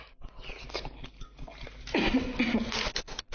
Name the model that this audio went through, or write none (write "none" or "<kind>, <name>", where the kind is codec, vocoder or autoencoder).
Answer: none